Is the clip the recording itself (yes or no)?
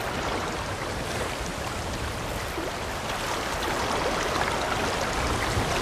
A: yes